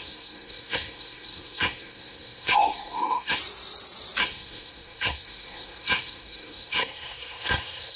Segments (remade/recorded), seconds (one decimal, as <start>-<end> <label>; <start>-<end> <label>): 0.0-3.4 remade; 3.4-4.2 recorded; 4.2-8.0 remade